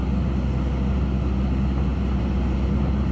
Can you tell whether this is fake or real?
real